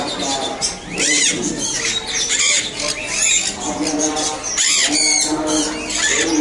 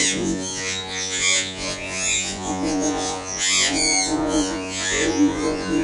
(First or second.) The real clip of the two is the first